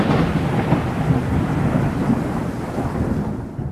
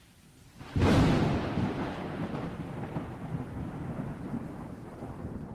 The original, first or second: first